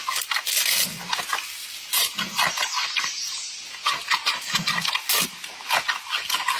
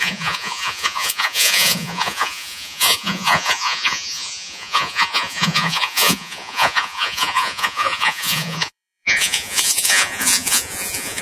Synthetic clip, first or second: second